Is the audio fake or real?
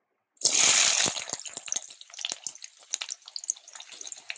real